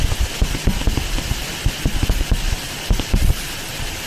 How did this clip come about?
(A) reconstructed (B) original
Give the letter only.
B